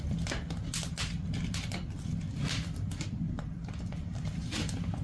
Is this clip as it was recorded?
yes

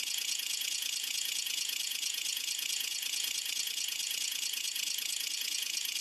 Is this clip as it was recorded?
no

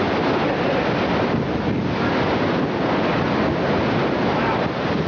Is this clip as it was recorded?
yes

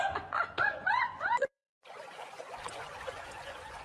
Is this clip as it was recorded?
no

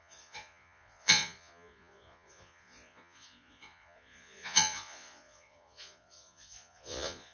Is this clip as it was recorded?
no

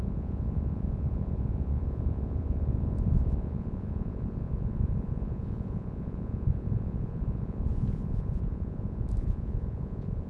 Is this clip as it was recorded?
no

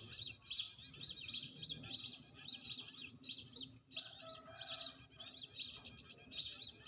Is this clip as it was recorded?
yes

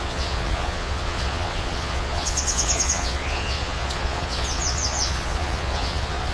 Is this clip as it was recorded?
no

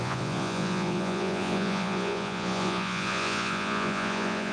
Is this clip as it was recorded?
no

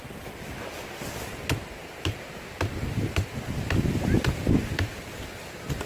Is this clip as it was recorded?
yes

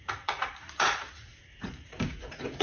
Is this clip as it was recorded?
no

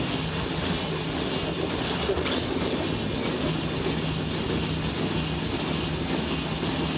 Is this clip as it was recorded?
yes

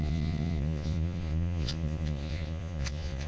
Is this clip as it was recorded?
no